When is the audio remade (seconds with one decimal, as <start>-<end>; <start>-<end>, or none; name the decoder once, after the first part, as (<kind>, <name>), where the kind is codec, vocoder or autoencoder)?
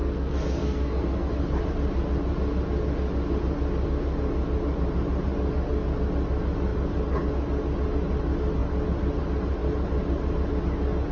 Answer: 0.0-1.3 (codec, SNAC)